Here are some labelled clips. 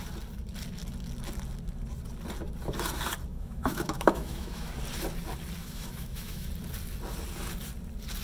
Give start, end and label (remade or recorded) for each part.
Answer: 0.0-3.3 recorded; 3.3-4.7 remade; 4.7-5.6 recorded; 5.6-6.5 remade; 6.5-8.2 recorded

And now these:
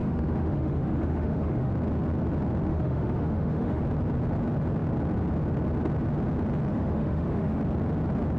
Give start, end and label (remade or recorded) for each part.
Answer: 0.0-1.7 remade; 1.7-2.7 recorded; 2.7-3.8 remade; 3.8-6.7 recorded; 6.7-7.6 remade; 7.6-8.4 recorded

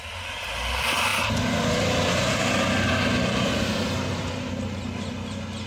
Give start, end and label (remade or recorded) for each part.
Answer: 0.0-5.7 recorded